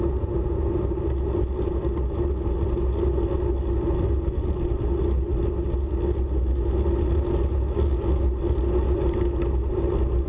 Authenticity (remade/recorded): recorded